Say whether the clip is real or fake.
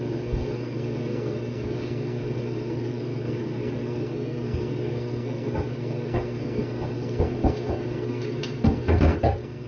fake